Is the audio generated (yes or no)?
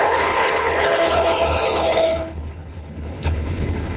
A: yes